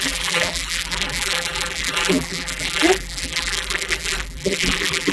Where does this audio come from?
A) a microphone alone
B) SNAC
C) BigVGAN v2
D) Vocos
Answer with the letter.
C